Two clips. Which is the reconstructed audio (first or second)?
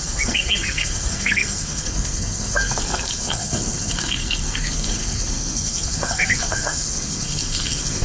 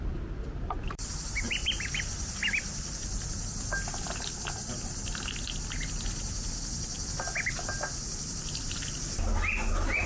first